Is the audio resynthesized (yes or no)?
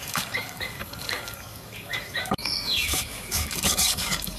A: yes